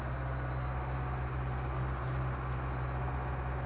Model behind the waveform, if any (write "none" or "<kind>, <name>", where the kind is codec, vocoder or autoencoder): none